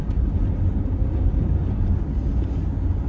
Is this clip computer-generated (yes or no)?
no